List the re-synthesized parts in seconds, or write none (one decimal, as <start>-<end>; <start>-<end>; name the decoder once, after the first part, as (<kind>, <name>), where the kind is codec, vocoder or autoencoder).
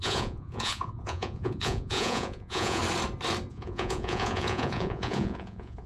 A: 0.0-2.8 (vocoder, Vocos); 3.5-5.9